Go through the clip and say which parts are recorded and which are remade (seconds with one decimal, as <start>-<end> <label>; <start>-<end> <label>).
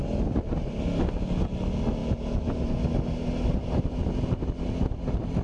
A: 0.0-5.4 recorded